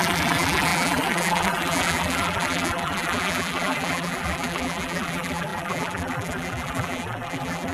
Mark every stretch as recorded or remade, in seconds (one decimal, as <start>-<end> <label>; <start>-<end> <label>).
0.0-7.7 remade

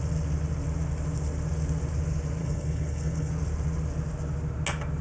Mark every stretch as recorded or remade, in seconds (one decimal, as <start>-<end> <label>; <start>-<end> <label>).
0.0-2.4 recorded; 2.4-3.3 remade; 3.3-5.0 recorded

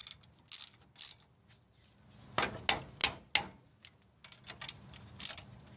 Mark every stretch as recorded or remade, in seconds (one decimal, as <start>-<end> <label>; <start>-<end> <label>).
0.0-5.8 recorded

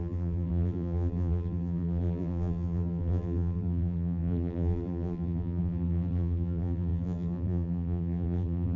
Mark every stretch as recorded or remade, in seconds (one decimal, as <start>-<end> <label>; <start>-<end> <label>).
0.0-8.8 remade

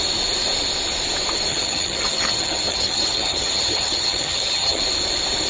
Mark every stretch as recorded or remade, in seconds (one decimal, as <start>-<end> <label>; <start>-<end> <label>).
0.0-1.5 recorded; 1.5-4.8 remade; 4.8-5.5 recorded

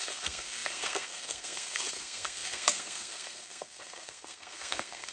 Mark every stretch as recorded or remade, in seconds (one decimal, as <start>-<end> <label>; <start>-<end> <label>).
0.0-5.1 remade